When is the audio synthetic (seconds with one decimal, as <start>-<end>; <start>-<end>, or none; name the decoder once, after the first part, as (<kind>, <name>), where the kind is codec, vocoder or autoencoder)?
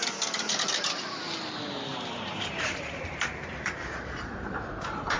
1.9-5.2 (vocoder, BigVGAN v2)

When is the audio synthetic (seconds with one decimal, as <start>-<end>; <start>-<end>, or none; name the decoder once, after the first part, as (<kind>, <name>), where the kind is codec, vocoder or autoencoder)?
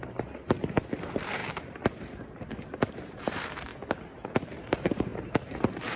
0.0-3.7 (vocoder, BigVGAN v2); 4.6-6.0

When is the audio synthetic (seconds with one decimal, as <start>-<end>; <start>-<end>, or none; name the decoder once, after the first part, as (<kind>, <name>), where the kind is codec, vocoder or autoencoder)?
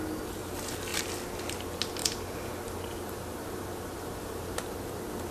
2.0-4.6 (vocoder, BigVGAN v2)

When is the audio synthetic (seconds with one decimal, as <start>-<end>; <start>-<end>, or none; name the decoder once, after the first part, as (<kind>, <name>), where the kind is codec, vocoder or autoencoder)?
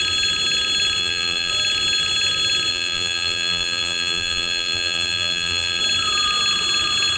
1.0-1.5 (vocoder, BigVGAN v2); 2.7-5.8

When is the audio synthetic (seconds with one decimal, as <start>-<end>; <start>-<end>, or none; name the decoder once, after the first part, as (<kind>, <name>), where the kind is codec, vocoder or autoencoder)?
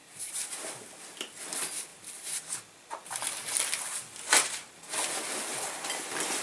0.0-0.9 (vocoder, BigVGAN v2); 1.9-2.5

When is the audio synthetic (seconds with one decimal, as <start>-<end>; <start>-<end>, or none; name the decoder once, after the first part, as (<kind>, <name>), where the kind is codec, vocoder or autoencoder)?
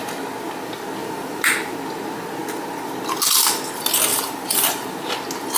1.0-1.7 (vocoder, BigVGAN v2); 4.1-5.1